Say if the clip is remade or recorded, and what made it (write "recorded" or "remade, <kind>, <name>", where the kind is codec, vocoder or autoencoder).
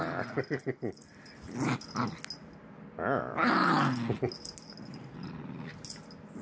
recorded